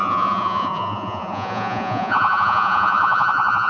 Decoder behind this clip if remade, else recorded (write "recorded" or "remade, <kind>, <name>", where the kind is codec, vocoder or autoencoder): remade, vocoder, Vocos